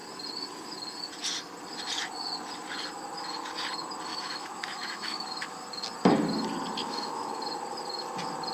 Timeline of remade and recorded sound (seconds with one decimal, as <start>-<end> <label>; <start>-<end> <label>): 0.0-4.1 recorded; 4.1-5.6 remade; 5.6-6.8 recorded; 6.8-7.4 remade; 7.4-8.5 recorded